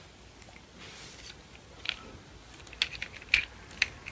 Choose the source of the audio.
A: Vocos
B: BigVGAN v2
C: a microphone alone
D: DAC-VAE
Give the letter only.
C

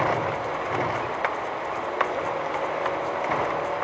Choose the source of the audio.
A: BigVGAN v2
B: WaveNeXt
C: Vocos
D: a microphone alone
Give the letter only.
D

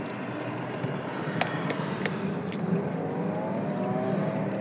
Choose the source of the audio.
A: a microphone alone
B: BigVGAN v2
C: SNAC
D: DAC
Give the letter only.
A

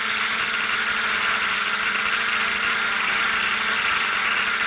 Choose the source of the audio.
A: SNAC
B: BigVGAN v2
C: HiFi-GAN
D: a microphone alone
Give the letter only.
D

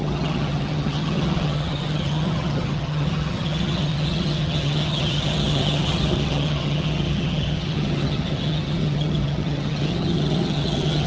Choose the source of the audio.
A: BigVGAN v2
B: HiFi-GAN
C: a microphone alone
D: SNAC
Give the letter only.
B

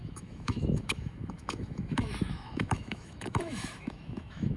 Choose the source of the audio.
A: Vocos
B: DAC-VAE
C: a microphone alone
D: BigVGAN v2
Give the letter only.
B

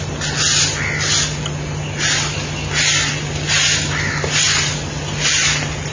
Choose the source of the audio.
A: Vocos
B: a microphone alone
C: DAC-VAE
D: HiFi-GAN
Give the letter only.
B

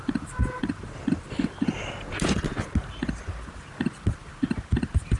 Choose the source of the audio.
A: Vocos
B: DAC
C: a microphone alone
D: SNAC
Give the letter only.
C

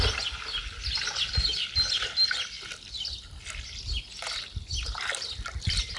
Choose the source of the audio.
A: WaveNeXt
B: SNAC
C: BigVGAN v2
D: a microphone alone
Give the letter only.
D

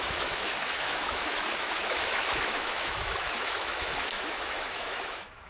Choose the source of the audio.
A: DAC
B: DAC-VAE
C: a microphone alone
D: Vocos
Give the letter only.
B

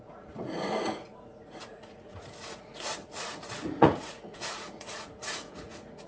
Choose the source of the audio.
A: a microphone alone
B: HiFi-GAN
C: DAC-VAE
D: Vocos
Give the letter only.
D